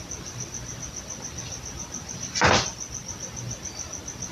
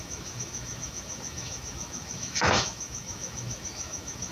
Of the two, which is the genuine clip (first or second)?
first